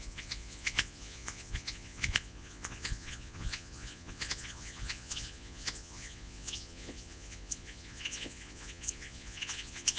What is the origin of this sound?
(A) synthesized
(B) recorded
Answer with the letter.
A